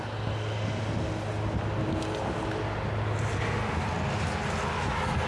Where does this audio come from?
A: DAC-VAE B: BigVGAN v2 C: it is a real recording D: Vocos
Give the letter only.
C